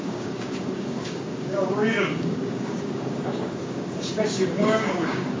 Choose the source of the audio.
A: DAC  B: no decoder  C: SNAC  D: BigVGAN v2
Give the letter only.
A